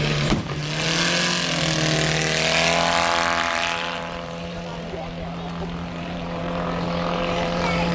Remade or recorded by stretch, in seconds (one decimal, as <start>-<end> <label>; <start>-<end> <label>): 0.0-0.6 remade; 0.6-3.4 recorded; 3.4-4.7 remade; 4.7-5.9 recorded; 5.9-7.9 remade